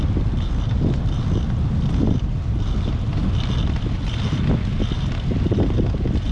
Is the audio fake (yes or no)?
no